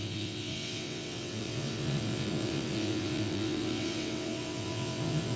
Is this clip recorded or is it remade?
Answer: remade